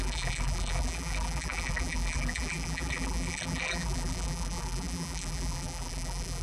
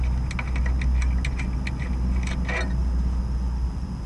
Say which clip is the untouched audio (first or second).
second